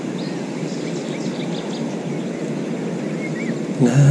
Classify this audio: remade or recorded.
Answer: recorded